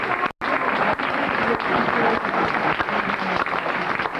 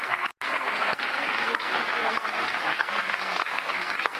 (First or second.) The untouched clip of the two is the first